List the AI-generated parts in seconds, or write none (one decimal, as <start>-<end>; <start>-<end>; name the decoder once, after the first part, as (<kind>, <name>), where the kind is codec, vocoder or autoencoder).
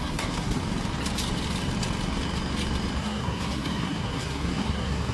0.0-0.6 (codec, SNAC); 3.0-5.1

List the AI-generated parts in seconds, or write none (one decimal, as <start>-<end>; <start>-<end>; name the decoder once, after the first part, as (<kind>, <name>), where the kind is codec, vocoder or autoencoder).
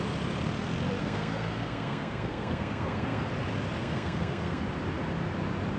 1.0-3.3 (codec, SNAC); 3.8-4.6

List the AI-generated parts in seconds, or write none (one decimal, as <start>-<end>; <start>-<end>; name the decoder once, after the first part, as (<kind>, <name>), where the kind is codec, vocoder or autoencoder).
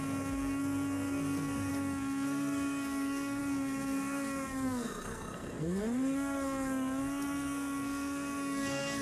0.0-9.0 (codec, SNAC)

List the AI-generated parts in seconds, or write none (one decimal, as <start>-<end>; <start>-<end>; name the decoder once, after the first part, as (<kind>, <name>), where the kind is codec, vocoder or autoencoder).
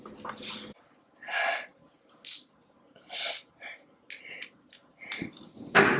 none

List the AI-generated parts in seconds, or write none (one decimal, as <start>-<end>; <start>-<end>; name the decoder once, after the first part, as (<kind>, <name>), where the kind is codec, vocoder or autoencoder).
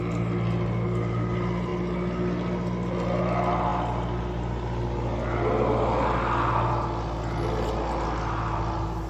none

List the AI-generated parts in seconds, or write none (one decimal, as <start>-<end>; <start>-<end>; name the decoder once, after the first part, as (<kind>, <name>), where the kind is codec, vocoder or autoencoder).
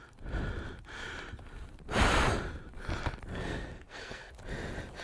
3.3-4.3 (codec, SNAC)